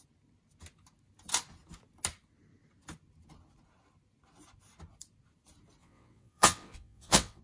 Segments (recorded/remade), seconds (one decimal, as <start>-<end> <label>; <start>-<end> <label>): 0.0-5.8 recorded; 5.8-7.4 remade